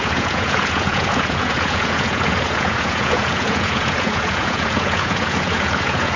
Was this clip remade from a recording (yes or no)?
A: yes